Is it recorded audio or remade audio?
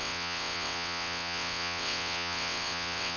remade